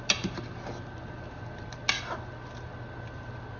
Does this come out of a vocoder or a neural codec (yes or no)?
no